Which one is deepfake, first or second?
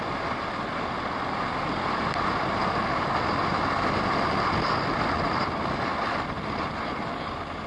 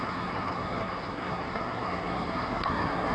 second